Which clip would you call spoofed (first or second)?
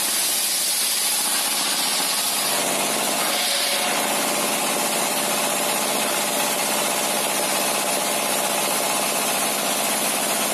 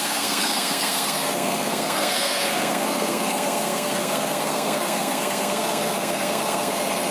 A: second